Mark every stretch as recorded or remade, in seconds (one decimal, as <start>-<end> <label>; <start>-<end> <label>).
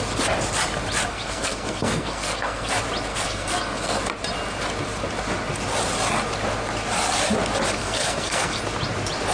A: 0.0-1.1 recorded; 1.1-2.7 remade; 2.7-3.1 recorded; 3.1-4.0 remade; 4.0-7.8 recorded; 7.8-8.6 remade; 8.6-9.3 recorded